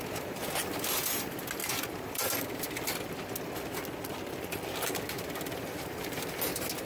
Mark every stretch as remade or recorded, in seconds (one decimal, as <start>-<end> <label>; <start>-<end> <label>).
0.0-6.9 recorded

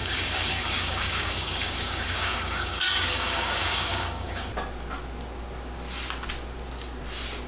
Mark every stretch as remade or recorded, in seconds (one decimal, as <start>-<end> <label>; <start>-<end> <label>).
0.0-4.5 remade; 4.5-7.5 recorded

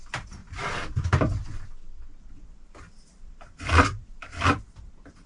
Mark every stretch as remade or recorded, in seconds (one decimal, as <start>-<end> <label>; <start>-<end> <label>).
0.0-0.4 remade; 0.4-2.9 recorded; 2.9-5.3 remade

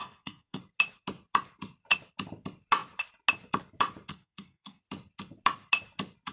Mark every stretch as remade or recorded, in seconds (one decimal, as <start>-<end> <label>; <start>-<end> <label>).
0.0-0.6 remade; 0.6-4.1 recorded; 4.1-4.8 remade; 4.8-6.3 recorded

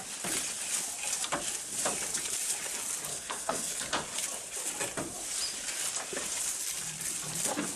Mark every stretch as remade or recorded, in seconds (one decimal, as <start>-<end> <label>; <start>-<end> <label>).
0.0-3.1 recorded; 3.1-3.8 remade; 3.8-7.8 recorded

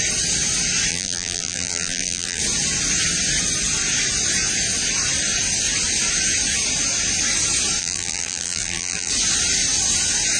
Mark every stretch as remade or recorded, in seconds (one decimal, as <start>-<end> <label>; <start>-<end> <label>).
0.0-0.9 recorded; 0.9-2.4 remade; 2.4-7.8 recorded; 7.8-9.1 remade; 9.1-10.4 recorded